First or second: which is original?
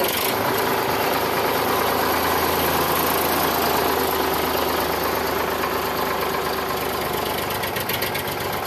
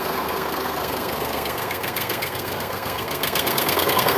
first